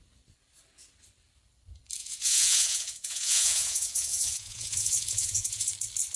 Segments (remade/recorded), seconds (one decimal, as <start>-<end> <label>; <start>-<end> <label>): 0.0-2.0 recorded; 2.0-5.7 remade; 5.7-6.2 recorded